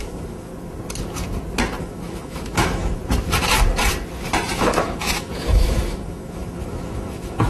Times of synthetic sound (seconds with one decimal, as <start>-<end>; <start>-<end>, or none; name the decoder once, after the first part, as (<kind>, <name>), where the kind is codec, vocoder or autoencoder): 0.0-0.5 (autoencoder, DAC-VAE); 1.8-3.0; 4.5-7.5